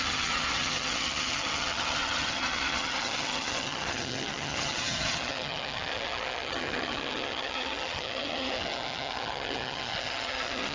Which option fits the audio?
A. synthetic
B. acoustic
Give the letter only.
A